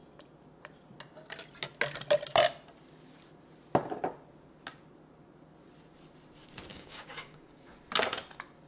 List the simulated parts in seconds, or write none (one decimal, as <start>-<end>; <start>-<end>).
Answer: 6.7-7.7